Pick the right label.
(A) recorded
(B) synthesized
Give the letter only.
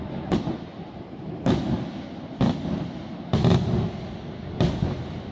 A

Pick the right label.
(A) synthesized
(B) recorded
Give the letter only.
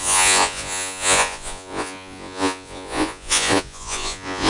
A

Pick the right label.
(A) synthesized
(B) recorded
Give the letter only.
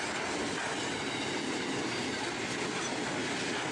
B